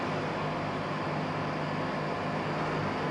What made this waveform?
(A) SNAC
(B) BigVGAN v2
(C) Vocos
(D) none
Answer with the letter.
D